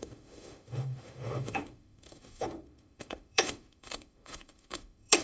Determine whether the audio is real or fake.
fake